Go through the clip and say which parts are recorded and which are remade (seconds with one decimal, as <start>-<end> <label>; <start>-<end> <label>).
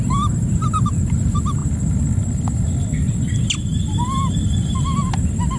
0.0-5.6 recorded